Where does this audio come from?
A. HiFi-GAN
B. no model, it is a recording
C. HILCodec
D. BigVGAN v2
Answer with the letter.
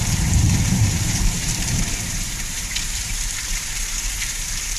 D